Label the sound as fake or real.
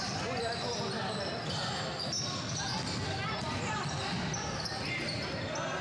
real